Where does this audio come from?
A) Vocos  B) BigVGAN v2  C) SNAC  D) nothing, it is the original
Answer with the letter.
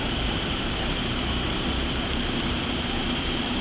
B